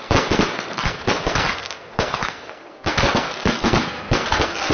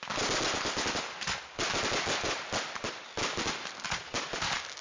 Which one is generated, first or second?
first